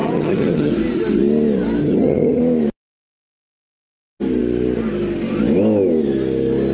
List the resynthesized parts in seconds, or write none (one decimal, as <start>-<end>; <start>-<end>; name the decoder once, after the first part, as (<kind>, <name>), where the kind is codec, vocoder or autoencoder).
0.0-0.7 (vocoder, HiFi-GAN); 1.8-2.4